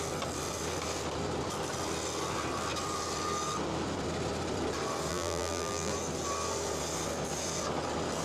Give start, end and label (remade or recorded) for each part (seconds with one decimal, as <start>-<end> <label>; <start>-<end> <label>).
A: 0.0-5.1 recorded; 5.1-5.9 remade; 5.9-8.2 recorded